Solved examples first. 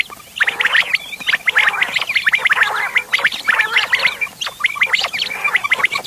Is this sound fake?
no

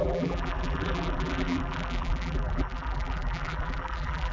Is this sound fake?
yes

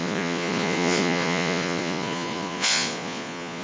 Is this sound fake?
yes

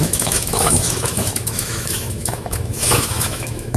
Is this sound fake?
yes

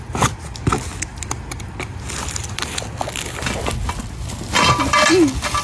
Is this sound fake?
no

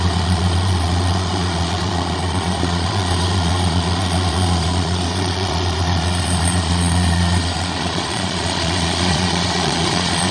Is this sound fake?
yes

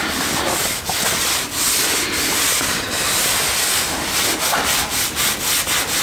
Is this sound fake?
no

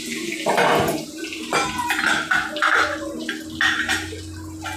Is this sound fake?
no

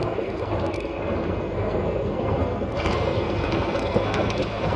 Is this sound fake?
yes